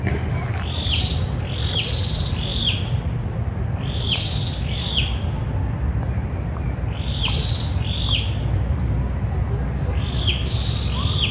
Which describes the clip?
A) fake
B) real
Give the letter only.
B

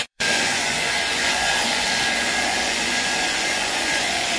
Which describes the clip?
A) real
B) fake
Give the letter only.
B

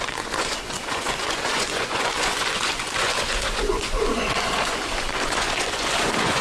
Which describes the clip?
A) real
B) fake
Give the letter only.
B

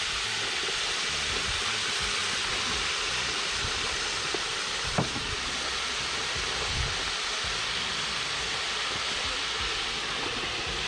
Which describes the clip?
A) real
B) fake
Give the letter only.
A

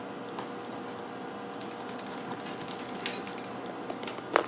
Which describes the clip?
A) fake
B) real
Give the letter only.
B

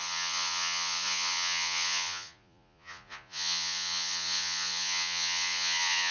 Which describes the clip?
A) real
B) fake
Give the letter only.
B